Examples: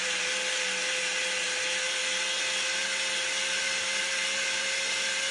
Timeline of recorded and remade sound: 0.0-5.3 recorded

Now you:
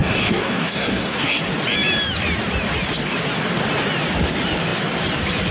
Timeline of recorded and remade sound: 0.0-1.4 remade; 1.4-5.5 recorded

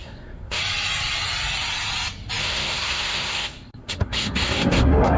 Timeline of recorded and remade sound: 0.0-0.6 remade; 0.6-2.4 recorded; 2.4-5.2 remade